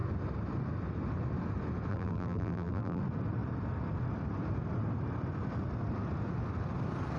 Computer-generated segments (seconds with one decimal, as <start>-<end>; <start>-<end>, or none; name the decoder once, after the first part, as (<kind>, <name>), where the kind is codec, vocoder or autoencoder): 1.9-3.0 (vocoder, BigVGAN v2)